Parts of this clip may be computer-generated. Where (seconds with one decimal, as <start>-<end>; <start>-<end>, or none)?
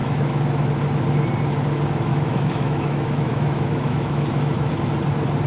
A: 0.0-0.8; 2.1-4.7